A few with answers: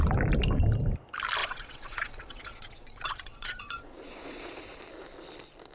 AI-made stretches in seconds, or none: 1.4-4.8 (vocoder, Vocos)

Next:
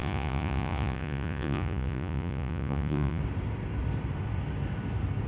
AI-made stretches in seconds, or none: 0.0-3.2 (vocoder, Vocos)

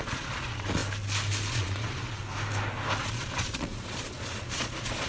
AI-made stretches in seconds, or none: 0.0-0.8 (vocoder, Vocos); 1.5-2.2; 3.0-5.1

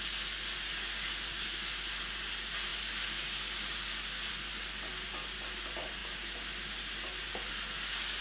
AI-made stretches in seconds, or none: none

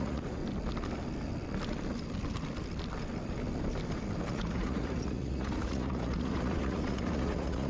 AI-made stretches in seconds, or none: 0.0-0.4 (vocoder, Vocos); 4.3-7.7

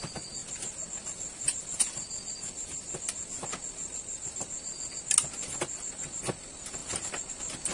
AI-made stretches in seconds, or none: none